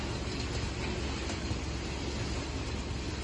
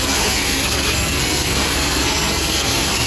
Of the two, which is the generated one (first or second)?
second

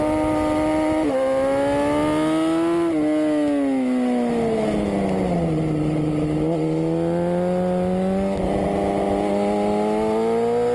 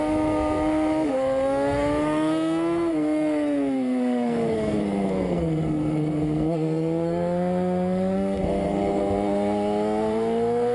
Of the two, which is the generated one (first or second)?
second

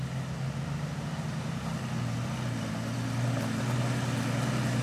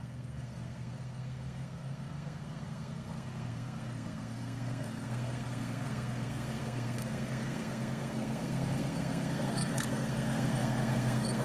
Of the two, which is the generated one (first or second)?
second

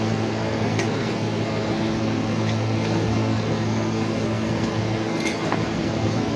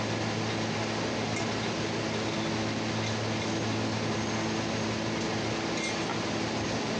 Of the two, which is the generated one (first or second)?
first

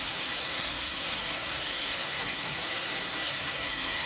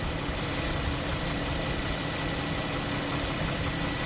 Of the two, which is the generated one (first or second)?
first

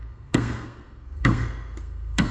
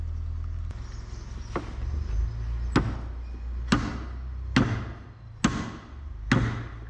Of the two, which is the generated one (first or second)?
first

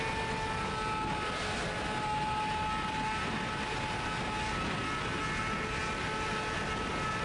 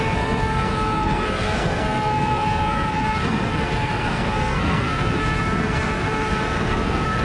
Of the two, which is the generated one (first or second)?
second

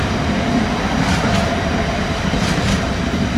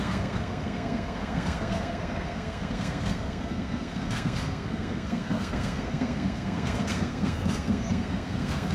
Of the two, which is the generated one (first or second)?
second